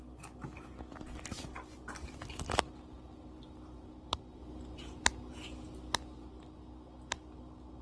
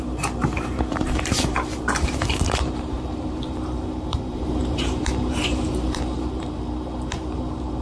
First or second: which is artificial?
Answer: second